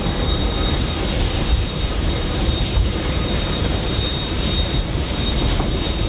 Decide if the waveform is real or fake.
fake